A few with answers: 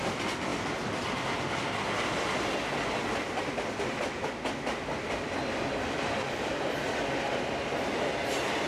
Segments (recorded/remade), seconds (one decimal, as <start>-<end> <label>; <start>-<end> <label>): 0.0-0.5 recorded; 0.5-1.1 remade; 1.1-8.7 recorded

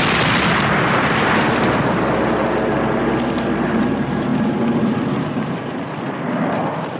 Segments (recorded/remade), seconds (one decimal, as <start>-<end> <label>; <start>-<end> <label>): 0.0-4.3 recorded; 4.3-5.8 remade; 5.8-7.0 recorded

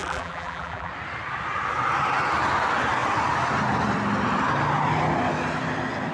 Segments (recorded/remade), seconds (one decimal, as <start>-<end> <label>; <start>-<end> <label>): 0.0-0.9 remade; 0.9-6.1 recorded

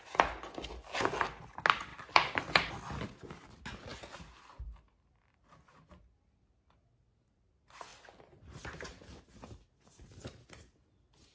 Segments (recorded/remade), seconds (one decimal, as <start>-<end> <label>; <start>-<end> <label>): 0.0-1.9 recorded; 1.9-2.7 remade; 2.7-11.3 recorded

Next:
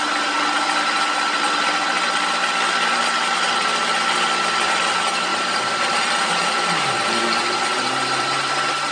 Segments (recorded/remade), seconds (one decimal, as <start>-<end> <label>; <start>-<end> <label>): 0.0-5.3 recorded; 5.3-8.5 remade; 8.5-8.9 recorded

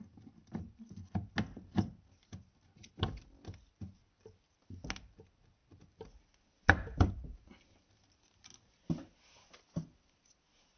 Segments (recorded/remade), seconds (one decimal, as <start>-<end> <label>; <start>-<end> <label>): 0.0-2.8 recorded; 2.8-3.6 remade; 3.6-5.6 recorded; 5.6-7.1 remade; 7.1-10.8 recorded

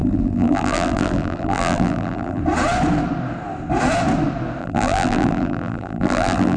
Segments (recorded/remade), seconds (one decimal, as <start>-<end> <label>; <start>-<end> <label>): 0.0-2.4 remade; 2.4-4.6 recorded; 4.6-6.6 remade

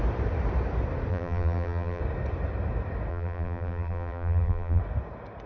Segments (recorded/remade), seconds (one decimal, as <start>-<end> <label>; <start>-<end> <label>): 0.0-1.1 recorded; 1.1-2.0 remade; 2.0-3.1 recorded; 3.1-4.8 remade; 4.8-5.5 recorded